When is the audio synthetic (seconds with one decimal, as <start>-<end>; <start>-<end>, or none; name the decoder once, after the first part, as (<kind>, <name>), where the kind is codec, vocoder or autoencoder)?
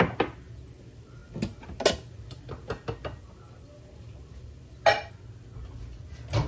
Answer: none